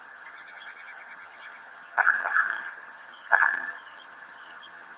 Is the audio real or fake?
fake